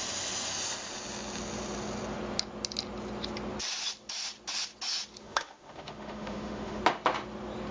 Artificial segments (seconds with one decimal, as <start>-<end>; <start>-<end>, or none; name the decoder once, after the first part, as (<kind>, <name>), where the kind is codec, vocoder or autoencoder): 5.2-6.8 (autoencoder, DAC-VAE)